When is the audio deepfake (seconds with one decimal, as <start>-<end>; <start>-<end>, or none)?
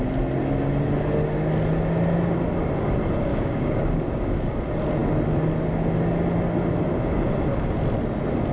3.3-4.6